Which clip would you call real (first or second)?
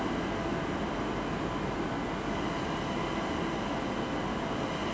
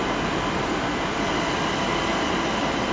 first